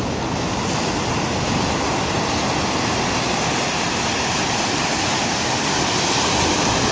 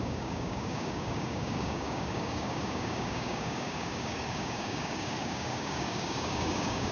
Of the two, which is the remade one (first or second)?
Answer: second